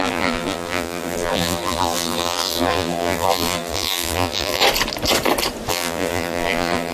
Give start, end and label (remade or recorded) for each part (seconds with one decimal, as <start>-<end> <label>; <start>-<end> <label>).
0.0-4.6 remade; 4.6-5.7 recorded; 5.7-6.9 remade